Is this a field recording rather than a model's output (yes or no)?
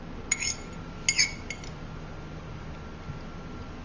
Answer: yes